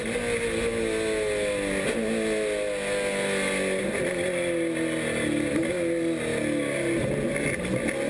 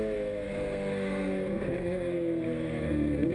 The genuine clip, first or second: first